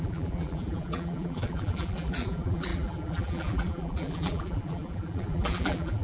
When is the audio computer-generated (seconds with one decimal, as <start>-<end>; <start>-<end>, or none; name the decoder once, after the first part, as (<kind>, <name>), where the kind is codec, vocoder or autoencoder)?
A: 0.0-6.0 (vocoder, BigVGAN v2)